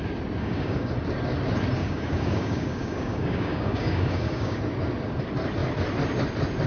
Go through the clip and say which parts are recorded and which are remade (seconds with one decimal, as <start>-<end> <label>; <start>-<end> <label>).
0.0-0.4 recorded; 0.4-0.9 remade; 0.9-1.8 recorded; 1.8-4.6 remade; 4.6-6.7 recorded